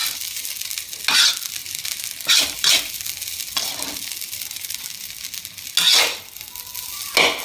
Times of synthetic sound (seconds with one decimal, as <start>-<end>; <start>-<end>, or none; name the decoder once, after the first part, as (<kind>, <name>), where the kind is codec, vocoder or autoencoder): 0.0-1.0 (vocoder, BigVGAN v2); 1.6-4.8